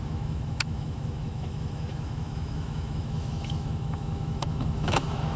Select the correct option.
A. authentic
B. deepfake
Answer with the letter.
B